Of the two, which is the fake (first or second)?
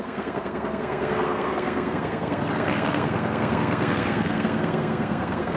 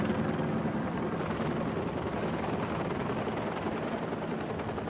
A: first